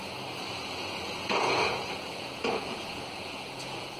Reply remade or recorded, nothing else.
remade